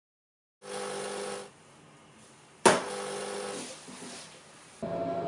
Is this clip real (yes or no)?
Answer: yes